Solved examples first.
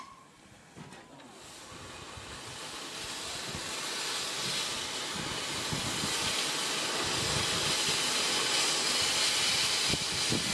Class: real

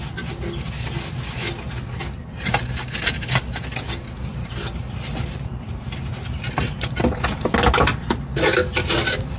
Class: real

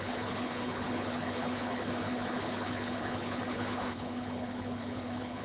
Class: fake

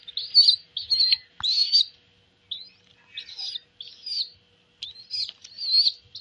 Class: real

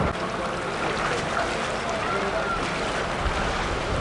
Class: real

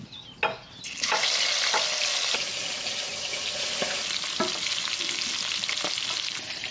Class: real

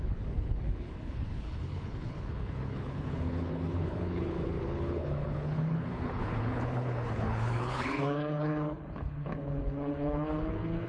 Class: fake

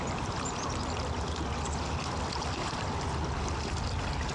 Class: real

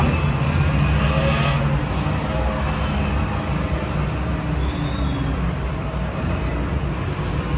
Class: real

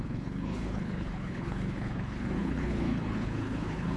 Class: fake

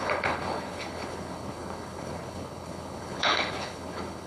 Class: fake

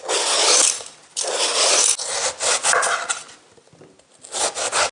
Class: real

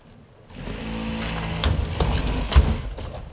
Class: real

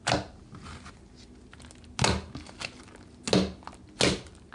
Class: real